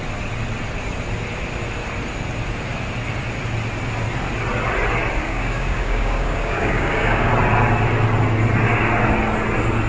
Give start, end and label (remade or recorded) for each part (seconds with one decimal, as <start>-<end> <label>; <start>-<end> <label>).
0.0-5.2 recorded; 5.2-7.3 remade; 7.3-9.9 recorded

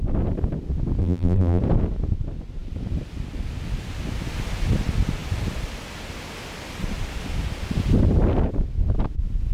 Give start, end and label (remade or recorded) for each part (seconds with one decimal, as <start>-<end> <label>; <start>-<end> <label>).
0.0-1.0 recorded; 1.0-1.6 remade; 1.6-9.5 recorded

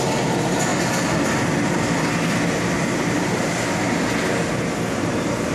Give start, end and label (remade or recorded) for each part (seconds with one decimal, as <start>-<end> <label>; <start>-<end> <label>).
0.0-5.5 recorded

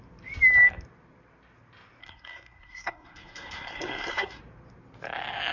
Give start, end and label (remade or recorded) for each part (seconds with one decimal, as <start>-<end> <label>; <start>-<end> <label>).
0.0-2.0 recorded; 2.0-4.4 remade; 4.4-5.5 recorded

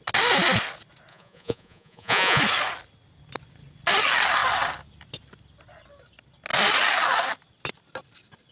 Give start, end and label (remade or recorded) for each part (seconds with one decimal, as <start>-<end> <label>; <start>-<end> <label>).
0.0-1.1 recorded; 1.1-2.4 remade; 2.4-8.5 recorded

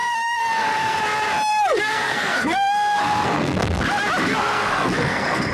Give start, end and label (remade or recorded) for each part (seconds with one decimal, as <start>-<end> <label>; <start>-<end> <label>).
0.0-1.0 remade; 1.0-1.5 recorded; 1.5-3.8 remade; 3.8-4.3 recorded; 4.3-5.5 remade

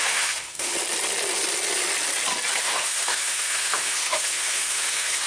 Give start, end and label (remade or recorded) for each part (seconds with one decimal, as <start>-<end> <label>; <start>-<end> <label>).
0.0-0.7 remade; 0.7-2.6 recorded; 2.6-5.3 remade

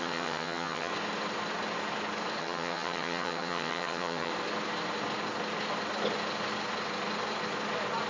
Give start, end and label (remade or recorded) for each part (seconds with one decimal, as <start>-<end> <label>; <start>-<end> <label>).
0.0-0.9 remade; 0.9-2.4 recorded; 2.4-4.3 remade; 4.3-8.1 recorded